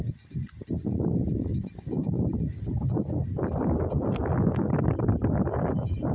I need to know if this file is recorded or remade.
recorded